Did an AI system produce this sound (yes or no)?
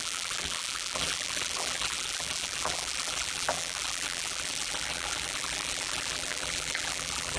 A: yes